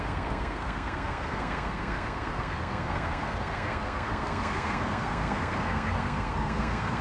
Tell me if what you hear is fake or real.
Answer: fake